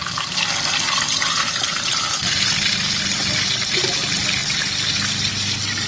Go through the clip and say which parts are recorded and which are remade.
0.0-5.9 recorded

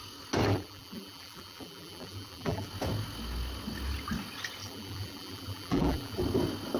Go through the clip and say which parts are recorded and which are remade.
0.0-0.5 recorded; 0.5-2.7 remade; 2.7-4.6 recorded; 4.6-6.2 remade; 6.2-6.8 recorded

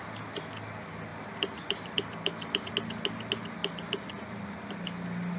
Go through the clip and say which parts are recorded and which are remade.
0.0-1.1 recorded; 1.1-2.7 remade; 2.7-3.6 recorded; 3.6-4.2 remade; 4.2-5.4 recorded

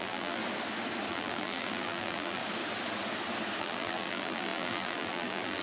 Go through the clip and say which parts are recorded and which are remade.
0.0-0.4 remade; 0.4-1.1 recorded; 1.1-2.4 remade; 2.4-3.6 recorded; 3.6-5.6 remade

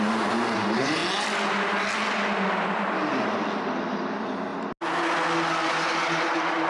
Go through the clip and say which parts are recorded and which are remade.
0.0-1.0 remade; 1.0-3.9 recorded; 3.9-4.5 remade; 4.5-5.5 recorded; 5.5-6.7 remade